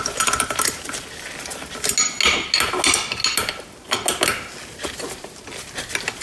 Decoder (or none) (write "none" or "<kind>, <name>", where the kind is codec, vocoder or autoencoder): none